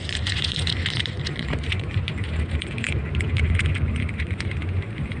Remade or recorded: remade